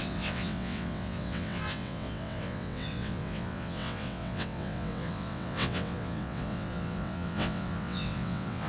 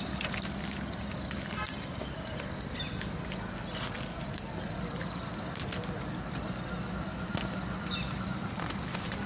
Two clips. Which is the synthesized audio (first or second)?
first